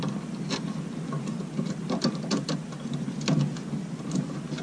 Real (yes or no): yes